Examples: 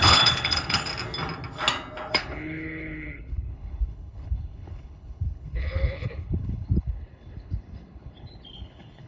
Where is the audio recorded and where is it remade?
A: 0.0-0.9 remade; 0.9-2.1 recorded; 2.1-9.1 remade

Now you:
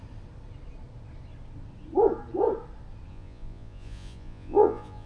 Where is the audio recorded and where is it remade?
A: 0.0-3.1 recorded; 3.1-5.1 remade

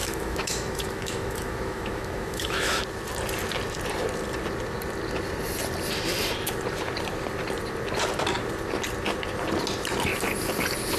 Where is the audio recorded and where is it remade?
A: 0.0-2.8 remade; 2.8-11.0 recorded

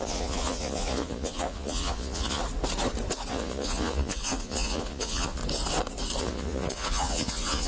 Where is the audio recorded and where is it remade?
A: 0.0-2.4 remade; 2.4-3.3 recorded; 3.3-5.4 remade; 5.4-6.2 recorded; 6.2-7.7 remade

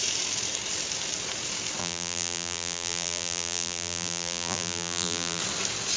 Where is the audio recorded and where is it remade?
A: 0.0-1.8 recorded; 1.8-5.4 remade; 5.4-6.0 recorded

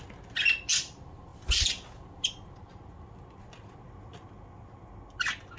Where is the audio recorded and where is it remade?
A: 0.0-5.6 recorded

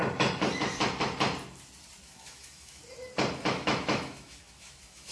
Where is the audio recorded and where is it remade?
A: 0.0-2.0 recorded; 2.0-2.8 remade; 2.8-3.5 recorded; 3.5-5.1 remade